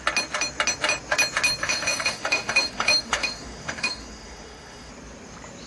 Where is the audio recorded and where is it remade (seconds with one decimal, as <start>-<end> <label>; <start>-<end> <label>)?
0.0-1.6 recorded; 1.6-4.9 remade; 4.9-5.7 recorded